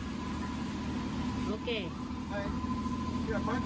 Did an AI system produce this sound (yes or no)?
no